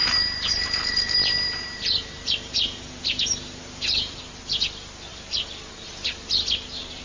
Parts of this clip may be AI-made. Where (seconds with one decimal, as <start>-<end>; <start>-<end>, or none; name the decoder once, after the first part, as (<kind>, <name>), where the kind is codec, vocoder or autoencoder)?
0.0-4.2 (vocoder, BigVGAN v2); 5.1-5.9